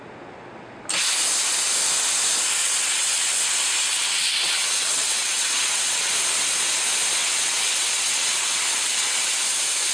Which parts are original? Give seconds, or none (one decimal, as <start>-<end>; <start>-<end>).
0.0-2.6; 3.4-3.9; 6.1-7.2; 9.3-9.9